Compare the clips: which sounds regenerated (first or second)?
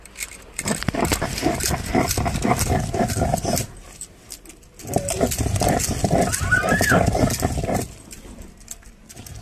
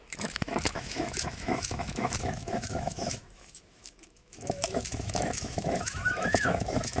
second